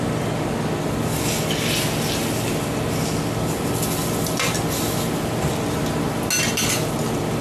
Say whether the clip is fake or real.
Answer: real